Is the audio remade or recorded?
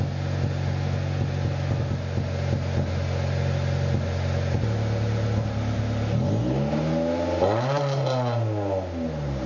recorded